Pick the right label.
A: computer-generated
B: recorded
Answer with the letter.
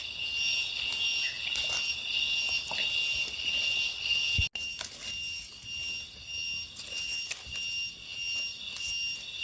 B